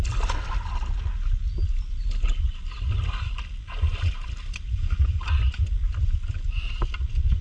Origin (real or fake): real